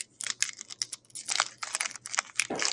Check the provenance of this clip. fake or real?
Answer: real